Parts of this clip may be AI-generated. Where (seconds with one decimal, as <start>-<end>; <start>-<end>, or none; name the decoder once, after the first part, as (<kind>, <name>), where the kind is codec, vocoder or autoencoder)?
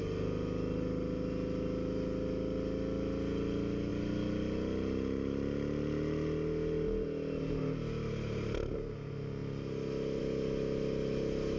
none